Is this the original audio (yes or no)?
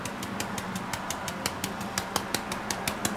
yes